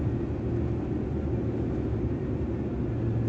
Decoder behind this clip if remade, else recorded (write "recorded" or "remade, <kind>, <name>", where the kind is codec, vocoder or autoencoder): recorded